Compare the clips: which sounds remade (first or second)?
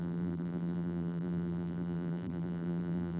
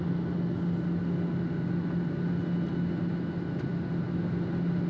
first